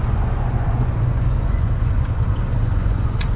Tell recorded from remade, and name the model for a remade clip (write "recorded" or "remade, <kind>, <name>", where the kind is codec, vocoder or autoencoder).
remade, vocoder, Vocos